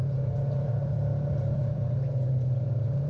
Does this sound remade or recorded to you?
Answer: remade